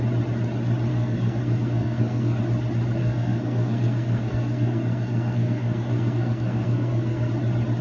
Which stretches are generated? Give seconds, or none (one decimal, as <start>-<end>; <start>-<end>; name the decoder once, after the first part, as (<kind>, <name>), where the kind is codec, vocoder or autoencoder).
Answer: 0.9-2.4 (codec, SNAC); 3.0-7.3